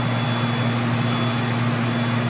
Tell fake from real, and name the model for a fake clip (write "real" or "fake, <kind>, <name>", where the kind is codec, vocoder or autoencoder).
real